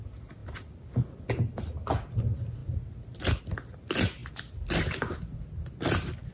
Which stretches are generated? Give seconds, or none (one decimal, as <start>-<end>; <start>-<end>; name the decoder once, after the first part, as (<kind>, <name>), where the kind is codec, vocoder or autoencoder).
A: 2.6-3.4 (vocoder, BigVGAN v2)